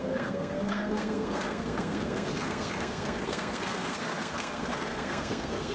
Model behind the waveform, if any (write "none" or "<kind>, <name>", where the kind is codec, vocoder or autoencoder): codec, SNAC